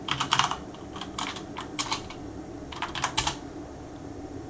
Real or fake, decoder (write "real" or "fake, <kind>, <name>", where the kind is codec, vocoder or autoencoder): fake, vocoder, BigVGAN v2